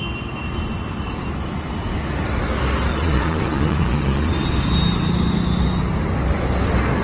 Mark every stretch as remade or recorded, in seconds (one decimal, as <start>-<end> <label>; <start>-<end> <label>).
0.0-2.9 recorded; 2.9-4.3 remade; 4.3-7.0 recorded